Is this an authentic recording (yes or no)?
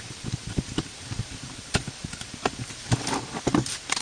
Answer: no